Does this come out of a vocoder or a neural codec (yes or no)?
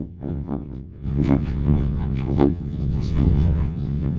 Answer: yes